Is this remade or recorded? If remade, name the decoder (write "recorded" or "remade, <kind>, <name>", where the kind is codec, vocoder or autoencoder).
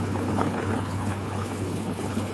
remade, codec, HILCodec